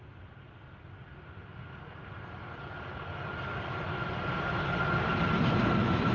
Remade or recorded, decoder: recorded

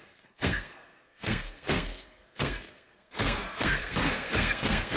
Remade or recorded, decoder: remade, codec, SNAC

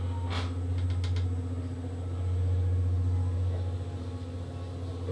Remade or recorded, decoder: recorded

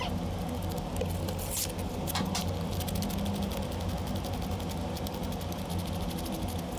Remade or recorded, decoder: recorded